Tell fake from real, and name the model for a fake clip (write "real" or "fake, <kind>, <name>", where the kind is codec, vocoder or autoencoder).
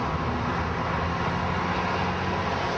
real